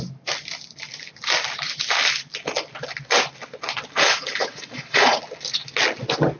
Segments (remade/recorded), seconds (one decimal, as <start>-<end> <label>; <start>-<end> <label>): 0.0-4.4 recorded; 4.4-5.2 remade; 5.2-6.4 recorded